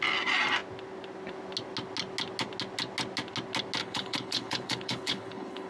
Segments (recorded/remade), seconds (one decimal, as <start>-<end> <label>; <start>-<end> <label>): 0.0-3.8 recorded; 3.8-5.7 remade